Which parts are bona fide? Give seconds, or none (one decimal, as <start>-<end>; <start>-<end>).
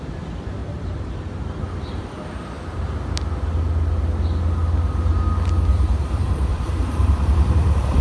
0.0-0.6; 1.6-5.7